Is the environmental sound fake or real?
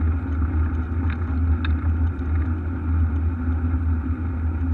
real